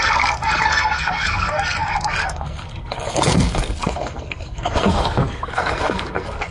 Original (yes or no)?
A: no